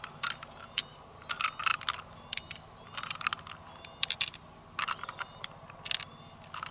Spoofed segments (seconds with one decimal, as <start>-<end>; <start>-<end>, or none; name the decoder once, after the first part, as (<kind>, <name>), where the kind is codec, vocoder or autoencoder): none